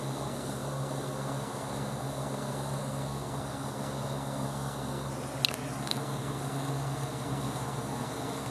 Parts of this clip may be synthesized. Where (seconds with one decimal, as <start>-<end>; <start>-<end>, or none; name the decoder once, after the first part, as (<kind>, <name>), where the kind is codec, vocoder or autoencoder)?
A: 0.0-5.1 (codec, SNAC); 5.8-8.5